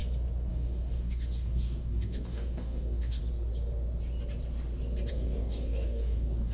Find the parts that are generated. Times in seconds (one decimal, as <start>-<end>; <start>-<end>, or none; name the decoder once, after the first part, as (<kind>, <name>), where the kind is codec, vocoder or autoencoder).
0.5-3.2 (codec, DAC); 5.1-6.5